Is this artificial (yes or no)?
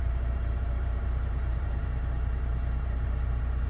yes